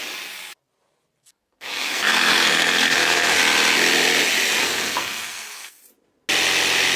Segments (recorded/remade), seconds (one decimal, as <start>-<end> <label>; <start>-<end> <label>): 0.0-1.2 recorded; 1.2-3.4 remade; 3.4-4.6 recorded; 4.6-5.8 remade; 5.8-7.0 recorded

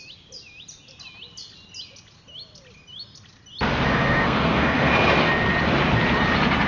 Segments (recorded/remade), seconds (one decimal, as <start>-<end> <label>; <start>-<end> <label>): 0.0-3.9 recorded; 3.9-4.9 remade; 4.9-6.7 recorded

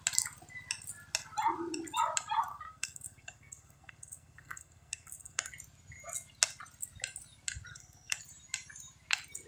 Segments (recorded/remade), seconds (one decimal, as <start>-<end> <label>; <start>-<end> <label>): 0.0-2.5 recorded; 2.5-5.5 remade; 5.5-7.7 recorded; 7.7-8.2 remade; 8.2-9.5 recorded

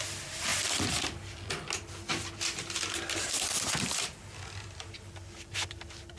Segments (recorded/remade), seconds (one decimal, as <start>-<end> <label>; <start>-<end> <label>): 0.0-3.2 recorded; 3.2-6.2 remade

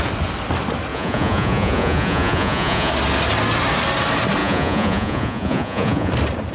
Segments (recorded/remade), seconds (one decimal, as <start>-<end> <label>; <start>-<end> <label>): 0.0-0.9 recorded; 0.9-2.9 remade; 2.9-4.4 recorded; 4.4-6.1 remade; 6.1-6.5 recorded

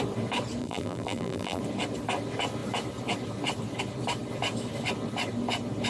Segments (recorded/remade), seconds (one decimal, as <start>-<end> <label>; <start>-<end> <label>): 0.0-0.6 recorded; 0.6-1.6 remade; 1.6-5.9 recorded